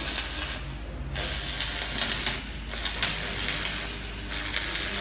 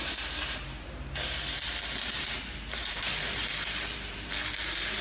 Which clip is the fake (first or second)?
second